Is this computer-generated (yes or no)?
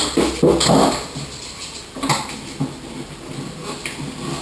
no